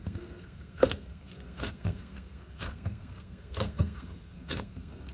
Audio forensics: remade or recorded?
remade